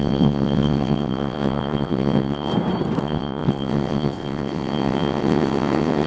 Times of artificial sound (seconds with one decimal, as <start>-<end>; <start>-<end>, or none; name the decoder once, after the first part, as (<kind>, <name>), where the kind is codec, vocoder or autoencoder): 0.0-2.5 (vocoder, WaveNeXt); 3.0-6.1